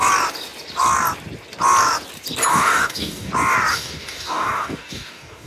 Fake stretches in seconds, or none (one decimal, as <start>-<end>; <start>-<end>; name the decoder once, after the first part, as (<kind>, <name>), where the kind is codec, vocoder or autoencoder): 2.5-3.3 (codec, DAC); 3.7-5.5